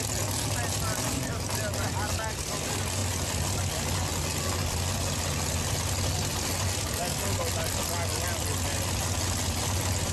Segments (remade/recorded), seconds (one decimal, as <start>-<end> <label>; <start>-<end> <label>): 0.0-10.1 recorded